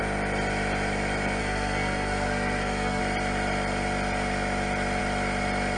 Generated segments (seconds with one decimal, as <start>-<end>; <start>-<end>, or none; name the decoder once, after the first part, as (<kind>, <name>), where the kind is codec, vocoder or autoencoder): 1.4-3.0 (codec, SNAC)